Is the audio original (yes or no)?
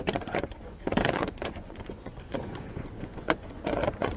no